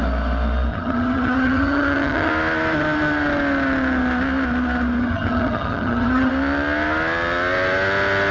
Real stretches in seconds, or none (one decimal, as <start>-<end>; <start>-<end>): 0.0-0.7; 2.3-5.0; 6.3-8.3